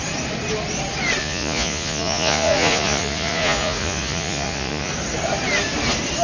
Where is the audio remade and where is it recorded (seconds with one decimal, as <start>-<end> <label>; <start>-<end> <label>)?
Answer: 0.0-1.2 recorded; 1.2-4.9 remade; 4.9-6.2 recorded